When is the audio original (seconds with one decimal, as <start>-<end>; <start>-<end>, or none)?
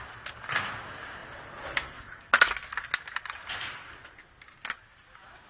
0.0-5.5